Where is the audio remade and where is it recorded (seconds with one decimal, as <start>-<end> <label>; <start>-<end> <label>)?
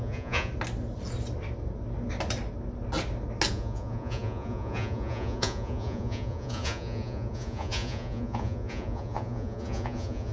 0.0-0.5 remade; 0.5-3.5 recorded; 3.5-10.3 remade